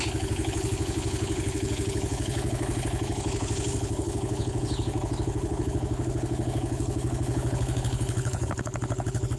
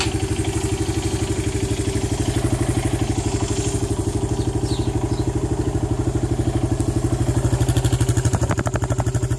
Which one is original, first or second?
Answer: second